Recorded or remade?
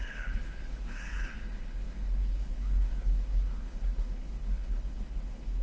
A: remade